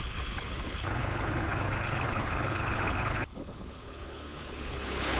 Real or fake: fake